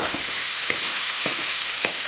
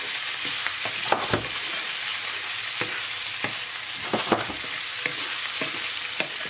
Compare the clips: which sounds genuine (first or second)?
second